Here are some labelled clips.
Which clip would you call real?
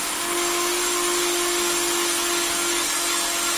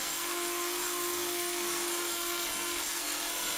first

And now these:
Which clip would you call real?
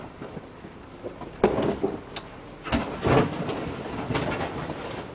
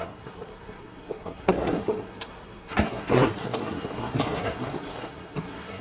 first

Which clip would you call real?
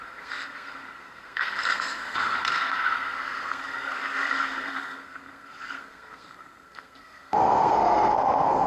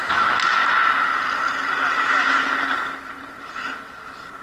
second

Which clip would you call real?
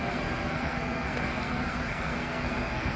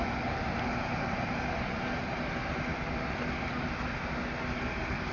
second